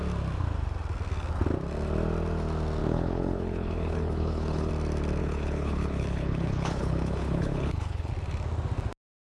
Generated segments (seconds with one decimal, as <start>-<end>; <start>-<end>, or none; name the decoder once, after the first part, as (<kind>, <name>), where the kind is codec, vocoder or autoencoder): 2.8-4.7 (codec, HILCodec); 5.2-8.1